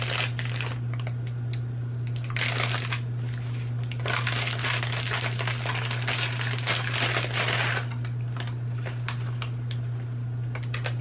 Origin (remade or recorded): recorded